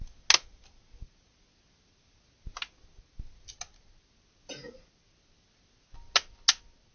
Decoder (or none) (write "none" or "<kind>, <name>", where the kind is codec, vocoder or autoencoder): none